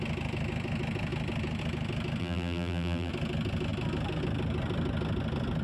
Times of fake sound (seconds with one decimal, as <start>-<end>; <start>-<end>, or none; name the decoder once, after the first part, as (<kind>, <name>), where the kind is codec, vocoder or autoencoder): 2.2-3.1 (vocoder, BigVGAN v2)